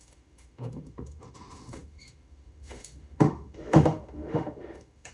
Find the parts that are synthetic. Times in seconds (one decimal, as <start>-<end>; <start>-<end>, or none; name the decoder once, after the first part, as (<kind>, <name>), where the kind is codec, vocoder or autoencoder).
0.0-5.1 (autoencoder, DAC-VAE)